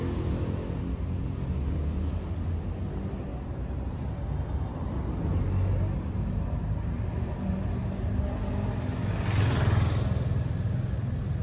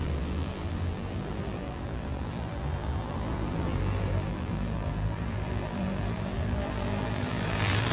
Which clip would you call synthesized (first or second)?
second